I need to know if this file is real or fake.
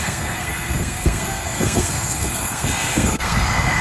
fake